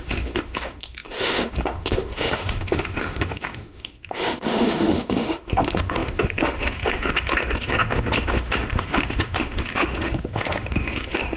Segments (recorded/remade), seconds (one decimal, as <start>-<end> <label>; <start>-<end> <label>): 0.0-11.4 remade